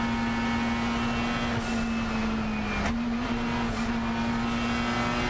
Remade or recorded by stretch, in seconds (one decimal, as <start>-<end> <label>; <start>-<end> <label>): 0.0-5.3 recorded